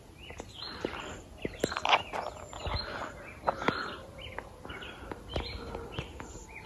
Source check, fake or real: real